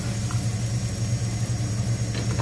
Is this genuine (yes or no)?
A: yes